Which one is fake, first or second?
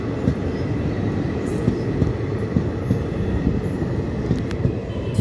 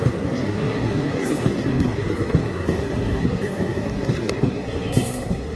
second